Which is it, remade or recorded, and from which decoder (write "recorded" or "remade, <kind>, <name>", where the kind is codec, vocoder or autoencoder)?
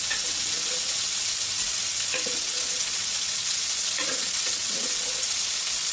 remade, vocoder, WaveNeXt